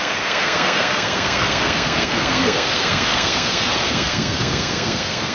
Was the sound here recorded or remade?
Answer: remade